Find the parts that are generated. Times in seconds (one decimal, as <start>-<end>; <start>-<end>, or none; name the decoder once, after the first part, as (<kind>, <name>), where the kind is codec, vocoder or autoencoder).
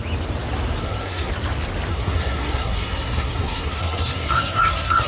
0.8-1.3 (codec, SNAC); 1.9-5.1